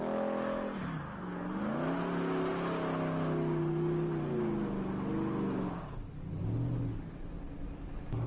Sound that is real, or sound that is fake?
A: real